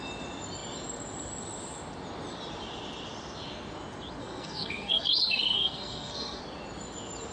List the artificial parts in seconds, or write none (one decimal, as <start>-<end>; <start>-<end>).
4.2-6.4